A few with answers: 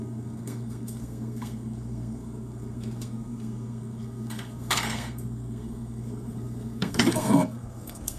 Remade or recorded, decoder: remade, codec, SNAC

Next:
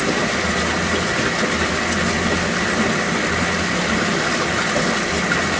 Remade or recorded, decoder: recorded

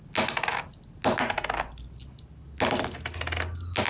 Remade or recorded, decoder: recorded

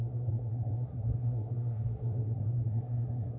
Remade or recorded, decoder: remade, codec, SNAC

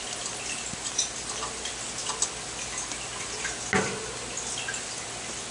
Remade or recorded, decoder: recorded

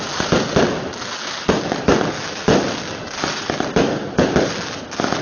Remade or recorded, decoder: recorded